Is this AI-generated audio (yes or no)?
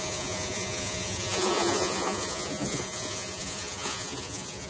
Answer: yes